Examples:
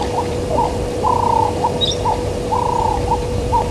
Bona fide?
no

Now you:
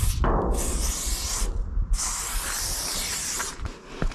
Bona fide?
no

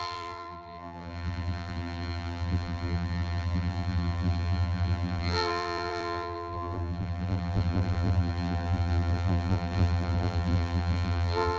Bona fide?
no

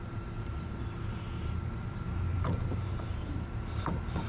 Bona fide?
no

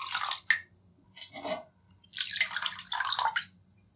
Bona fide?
yes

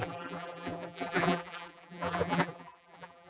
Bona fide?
no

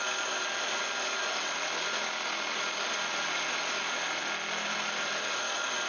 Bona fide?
yes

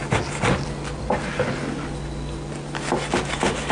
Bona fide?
yes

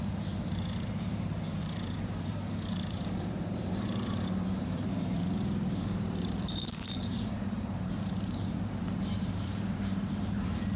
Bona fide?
no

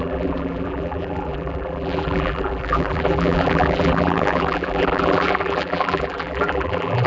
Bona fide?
no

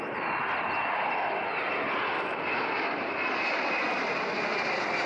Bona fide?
yes